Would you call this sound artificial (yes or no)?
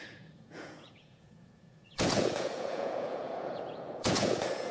yes